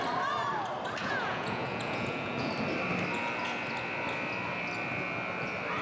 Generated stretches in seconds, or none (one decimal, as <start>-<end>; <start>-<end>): 1.0-2.5